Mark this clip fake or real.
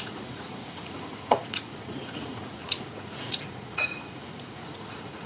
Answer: fake